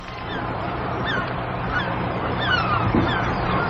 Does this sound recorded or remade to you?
remade